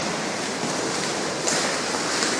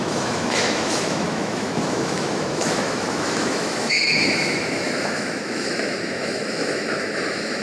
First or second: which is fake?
second